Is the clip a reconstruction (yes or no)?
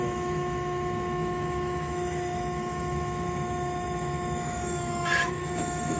yes